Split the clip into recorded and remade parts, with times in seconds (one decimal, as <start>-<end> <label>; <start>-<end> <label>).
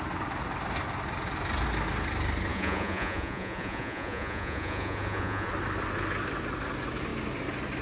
0.0-2.5 recorded; 2.5-5.5 remade; 5.5-7.8 recorded